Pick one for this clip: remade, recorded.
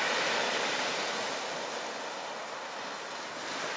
recorded